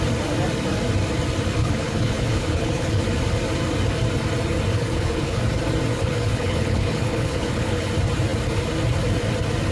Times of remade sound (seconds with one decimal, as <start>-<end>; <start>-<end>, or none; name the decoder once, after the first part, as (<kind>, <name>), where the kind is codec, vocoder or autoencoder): 1.6-3.0 (codec, HILCodec); 4.7-5.4; 5.9-7.9